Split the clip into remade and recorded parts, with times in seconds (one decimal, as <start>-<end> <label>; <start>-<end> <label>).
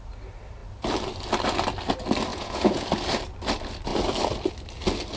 0.0-2.3 recorded; 2.3-2.9 remade; 2.9-5.2 recorded